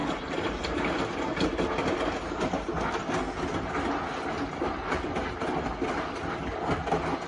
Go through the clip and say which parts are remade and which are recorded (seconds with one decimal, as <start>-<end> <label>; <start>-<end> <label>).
0.0-0.9 remade; 0.9-7.3 recorded